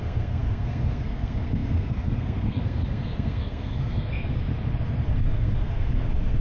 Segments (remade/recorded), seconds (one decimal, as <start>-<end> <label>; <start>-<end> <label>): 0.0-4.5 remade; 4.5-5.1 recorded; 5.1-6.4 remade